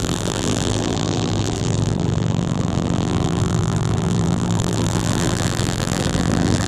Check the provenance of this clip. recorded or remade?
remade